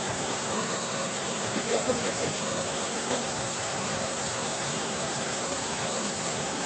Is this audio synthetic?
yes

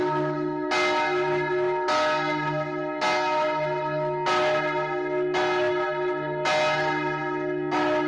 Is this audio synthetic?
no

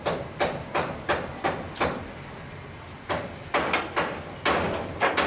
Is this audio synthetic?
no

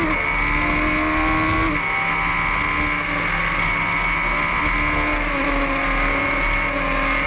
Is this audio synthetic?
no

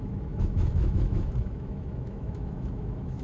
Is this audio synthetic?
yes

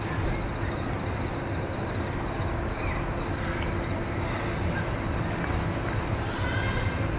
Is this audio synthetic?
no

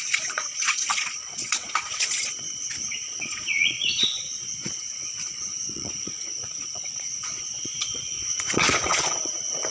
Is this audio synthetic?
yes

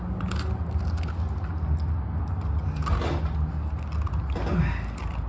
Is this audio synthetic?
no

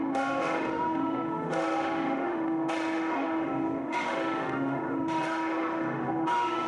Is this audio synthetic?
yes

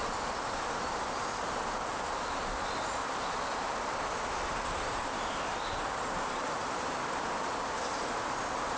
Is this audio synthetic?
no